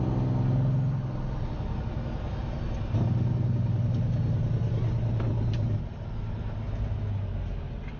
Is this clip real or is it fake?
real